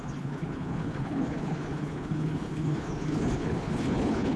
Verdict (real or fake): fake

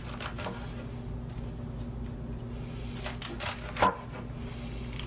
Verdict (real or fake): real